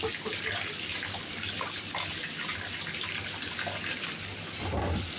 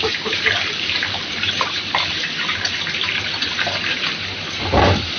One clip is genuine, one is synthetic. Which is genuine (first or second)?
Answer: first